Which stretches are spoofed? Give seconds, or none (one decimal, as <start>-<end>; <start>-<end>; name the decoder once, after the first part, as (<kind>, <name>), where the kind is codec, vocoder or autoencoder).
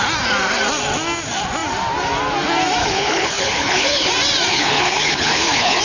2.8-4.1 (codec, HILCodec); 4.5-5.8